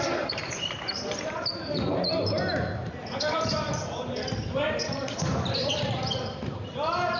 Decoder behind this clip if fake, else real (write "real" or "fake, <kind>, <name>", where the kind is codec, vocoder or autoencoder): fake, vocoder, BigVGAN v2